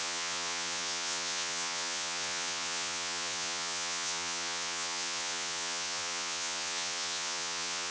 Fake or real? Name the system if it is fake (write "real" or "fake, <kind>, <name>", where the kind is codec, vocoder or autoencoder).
fake, vocoder, Vocos